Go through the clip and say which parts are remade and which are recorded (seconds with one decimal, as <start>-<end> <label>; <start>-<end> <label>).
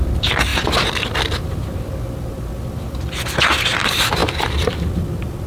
0.0-5.5 remade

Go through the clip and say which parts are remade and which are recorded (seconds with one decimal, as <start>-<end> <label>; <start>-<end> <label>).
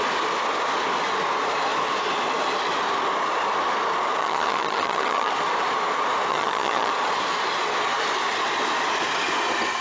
0.0-4.2 recorded; 4.2-5.3 remade; 5.3-6.3 recorded; 6.3-6.9 remade; 6.9-9.8 recorded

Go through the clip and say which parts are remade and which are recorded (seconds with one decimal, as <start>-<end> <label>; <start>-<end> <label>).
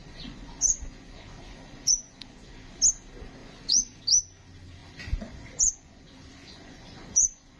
0.0-2.8 remade; 2.8-3.4 recorded; 3.4-4.0 remade; 4.0-4.8 recorded; 4.8-7.6 remade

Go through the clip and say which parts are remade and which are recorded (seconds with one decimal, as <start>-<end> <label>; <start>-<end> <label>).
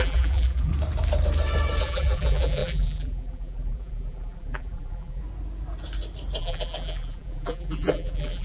0.0-0.7 remade; 0.7-1.8 recorded; 1.8-5.2 remade; 5.2-6.4 recorded; 6.4-8.4 remade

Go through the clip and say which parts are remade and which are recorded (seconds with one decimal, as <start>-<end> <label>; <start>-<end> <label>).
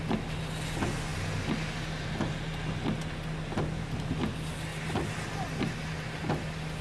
0.0-6.8 recorded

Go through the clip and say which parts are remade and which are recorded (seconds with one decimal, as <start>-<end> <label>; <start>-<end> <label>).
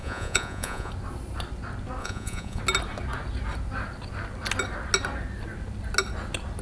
0.0-0.9 remade; 0.9-2.0 recorded; 2.0-2.6 remade; 2.6-6.6 recorded